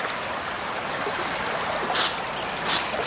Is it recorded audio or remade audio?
recorded